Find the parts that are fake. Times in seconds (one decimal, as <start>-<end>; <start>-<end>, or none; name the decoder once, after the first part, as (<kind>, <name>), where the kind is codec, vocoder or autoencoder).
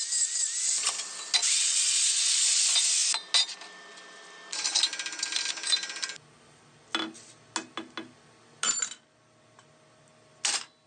1.4-2.6 (vocoder, WaveNeXt)